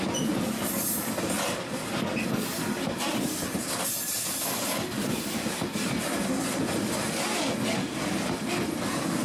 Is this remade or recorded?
recorded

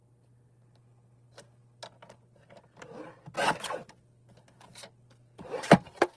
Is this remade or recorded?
recorded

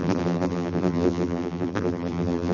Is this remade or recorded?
remade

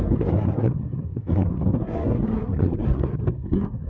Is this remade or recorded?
remade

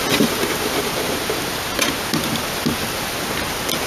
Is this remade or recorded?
recorded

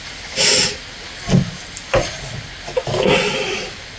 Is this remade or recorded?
recorded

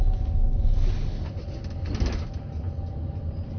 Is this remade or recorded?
recorded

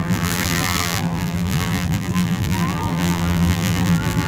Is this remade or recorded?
remade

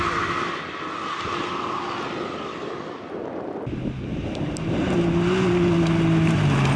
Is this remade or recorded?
recorded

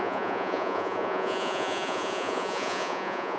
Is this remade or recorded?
remade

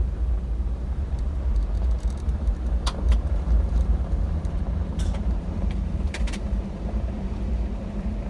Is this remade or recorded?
remade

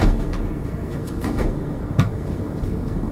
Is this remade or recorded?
remade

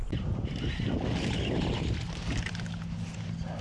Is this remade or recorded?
recorded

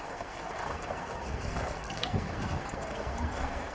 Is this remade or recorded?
remade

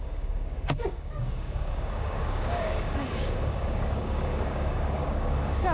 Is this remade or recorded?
remade